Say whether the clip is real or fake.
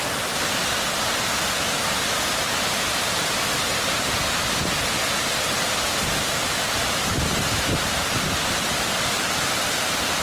real